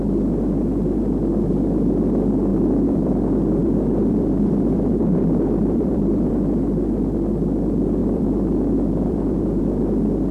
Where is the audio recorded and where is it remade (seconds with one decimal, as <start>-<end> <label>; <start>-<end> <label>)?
0.0-2.5 recorded; 2.5-3.2 remade; 3.2-3.6 recorded; 3.6-6.3 remade; 6.3-8.0 recorded; 8.0-9.6 remade; 9.6-10.3 recorded